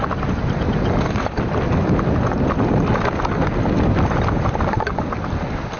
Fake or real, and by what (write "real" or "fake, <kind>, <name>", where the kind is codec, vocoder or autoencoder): real